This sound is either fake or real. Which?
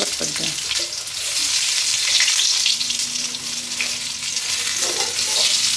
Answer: real